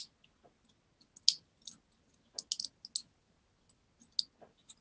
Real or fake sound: real